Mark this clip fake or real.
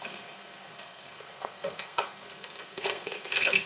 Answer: fake